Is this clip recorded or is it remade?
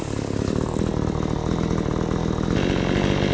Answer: recorded